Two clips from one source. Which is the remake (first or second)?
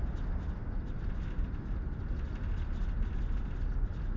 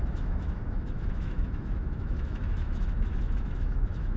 second